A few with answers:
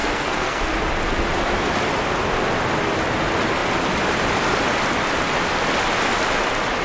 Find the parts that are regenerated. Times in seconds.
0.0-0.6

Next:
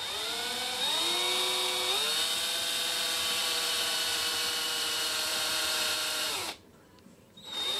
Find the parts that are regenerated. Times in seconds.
3.4-7.8

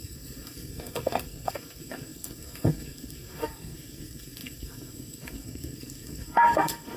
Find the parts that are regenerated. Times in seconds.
0.0-7.0

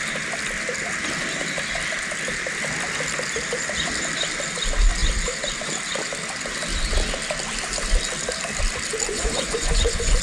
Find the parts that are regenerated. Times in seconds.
9.1-10.2

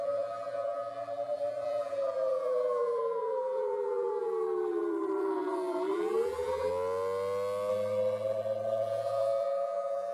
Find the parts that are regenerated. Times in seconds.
0.0-6.7; 7.7-10.1

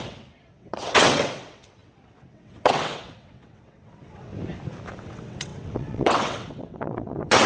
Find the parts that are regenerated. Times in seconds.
0.0-4.3; 5.0-7.5